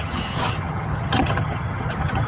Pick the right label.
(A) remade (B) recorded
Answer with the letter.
A